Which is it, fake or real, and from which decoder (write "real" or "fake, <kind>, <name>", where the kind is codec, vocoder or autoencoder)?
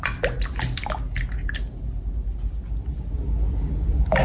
real